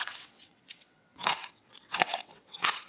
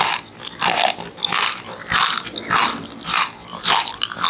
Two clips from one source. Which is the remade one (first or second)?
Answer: first